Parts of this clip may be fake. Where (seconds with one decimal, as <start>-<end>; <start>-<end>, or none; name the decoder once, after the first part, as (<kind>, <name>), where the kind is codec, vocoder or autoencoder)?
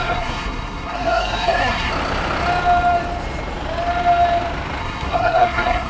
0.0-1.9 (codec, SNAC); 4.8-5.9